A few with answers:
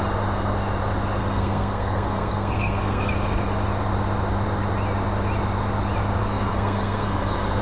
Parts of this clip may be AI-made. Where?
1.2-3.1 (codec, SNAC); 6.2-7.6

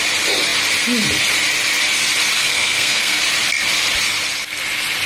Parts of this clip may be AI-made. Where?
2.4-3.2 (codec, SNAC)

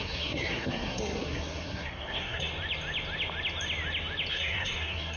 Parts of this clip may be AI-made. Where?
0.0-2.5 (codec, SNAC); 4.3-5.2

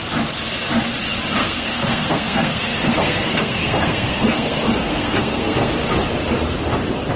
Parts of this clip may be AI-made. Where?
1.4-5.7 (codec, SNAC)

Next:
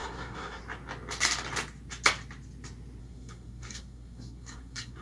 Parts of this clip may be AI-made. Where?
0.0-0.6 (codec, SNAC); 3.0-5.0